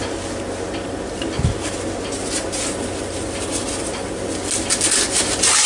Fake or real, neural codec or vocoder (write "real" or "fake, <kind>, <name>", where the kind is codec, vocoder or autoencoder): real